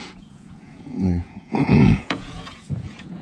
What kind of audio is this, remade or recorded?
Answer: remade